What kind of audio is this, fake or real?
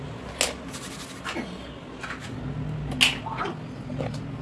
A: real